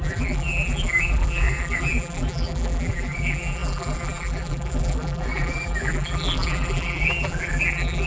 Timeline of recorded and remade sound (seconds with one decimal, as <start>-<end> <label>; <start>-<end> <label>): 0.0-8.1 remade